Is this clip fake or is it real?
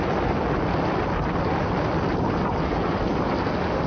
real